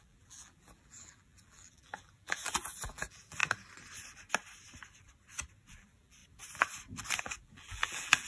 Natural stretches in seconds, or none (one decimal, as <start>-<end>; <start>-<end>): 3.4-5.7; 6.2-7.2